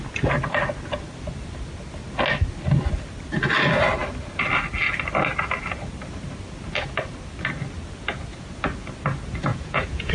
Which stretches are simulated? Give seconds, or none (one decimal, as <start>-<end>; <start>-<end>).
9.5-10.1